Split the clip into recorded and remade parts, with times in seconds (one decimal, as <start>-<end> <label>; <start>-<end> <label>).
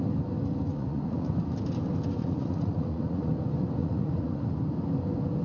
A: 0.0-0.7 recorded; 0.7-1.3 remade; 1.3-2.2 recorded; 2.2-3.3 remade; 3.3-3.8 recorded; 3.8-4.5 remade; 4.5-5.4 recorded